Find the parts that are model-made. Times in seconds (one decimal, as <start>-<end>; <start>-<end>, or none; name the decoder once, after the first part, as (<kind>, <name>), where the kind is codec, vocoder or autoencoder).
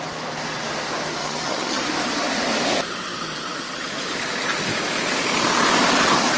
1.2-1.8 (vocoder, HiFi-GAN)